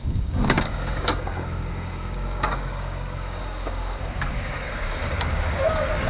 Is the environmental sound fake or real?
fake